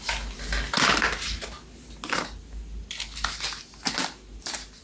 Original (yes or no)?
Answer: yes